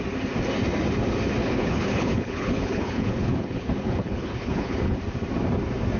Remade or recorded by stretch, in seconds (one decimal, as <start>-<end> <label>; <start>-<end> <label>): 0.0-1.4 recorded; 1.4-5.0 remade; 5.0-6.0 recorded